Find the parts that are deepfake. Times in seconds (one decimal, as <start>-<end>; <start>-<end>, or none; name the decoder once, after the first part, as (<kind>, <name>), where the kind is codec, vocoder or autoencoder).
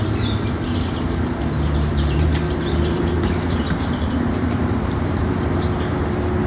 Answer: 1.9-5.4 (vocoder, BigVGAN v2)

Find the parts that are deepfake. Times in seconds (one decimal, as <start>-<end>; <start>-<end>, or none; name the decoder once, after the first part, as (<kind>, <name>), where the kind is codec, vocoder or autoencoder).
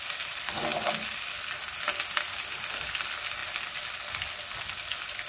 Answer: none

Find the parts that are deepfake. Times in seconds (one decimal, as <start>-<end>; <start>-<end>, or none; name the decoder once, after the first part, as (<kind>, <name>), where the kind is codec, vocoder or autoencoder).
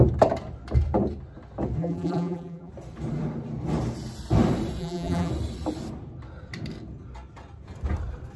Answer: 1.8-2.7 (vocoder, BigVGAN v2); 4.8-5.3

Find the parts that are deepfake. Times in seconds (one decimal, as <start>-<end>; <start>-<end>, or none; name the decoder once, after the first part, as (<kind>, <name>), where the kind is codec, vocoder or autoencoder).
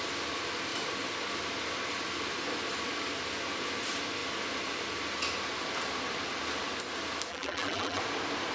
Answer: 7.3-8.0 (vocoder, BigVGAN v2)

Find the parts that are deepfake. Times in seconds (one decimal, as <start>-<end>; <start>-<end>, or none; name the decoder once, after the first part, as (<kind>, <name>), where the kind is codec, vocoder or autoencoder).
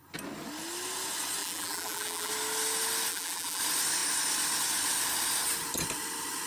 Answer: 1.4-2.3 (vocoder, BigVGAN v2); 3.1-3.6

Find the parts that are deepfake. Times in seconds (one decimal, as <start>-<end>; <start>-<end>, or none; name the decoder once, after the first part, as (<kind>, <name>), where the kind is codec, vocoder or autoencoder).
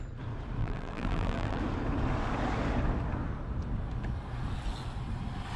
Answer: 0.6-1.6 (vocoder, BigVGAN v2)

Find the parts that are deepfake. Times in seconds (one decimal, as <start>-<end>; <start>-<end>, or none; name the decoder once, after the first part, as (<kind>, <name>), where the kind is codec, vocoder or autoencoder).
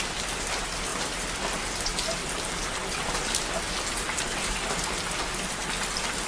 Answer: 2.2-4.2 (vocoder, BigVGAN v2)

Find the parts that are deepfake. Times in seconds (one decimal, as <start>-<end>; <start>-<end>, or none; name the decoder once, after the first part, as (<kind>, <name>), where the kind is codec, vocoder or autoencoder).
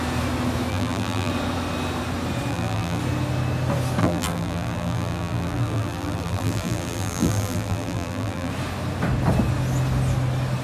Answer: 0.7-1.3 (vocoder, BigVGAN v2); 2.5-3.0; 4.0-8.5